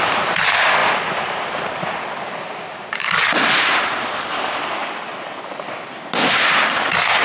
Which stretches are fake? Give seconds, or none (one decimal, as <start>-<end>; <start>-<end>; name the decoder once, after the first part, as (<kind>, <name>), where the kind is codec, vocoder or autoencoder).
none